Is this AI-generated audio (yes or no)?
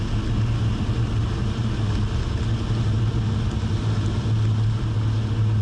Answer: no